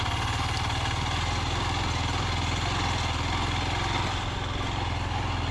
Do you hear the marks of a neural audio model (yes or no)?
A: no